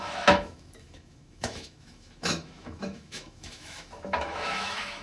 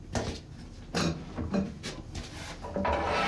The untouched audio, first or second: second